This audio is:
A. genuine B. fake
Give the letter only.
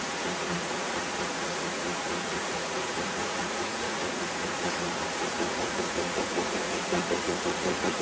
B